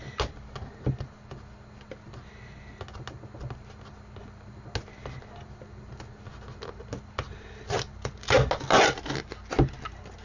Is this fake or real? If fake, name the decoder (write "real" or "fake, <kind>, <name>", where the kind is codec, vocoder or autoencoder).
real